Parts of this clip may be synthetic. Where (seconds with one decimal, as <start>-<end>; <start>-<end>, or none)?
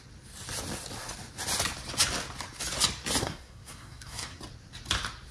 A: 3.2-4.4